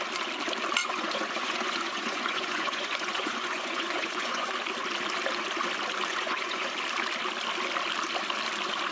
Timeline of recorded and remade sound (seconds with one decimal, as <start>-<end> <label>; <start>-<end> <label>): 0.0-0.8 recorded; 0.8-4.5 remade; 4.5-6.1 recorded; 6.1-6.7 remade; 6.7-8.9 recorded